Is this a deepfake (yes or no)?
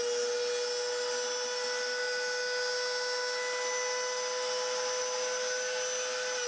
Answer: no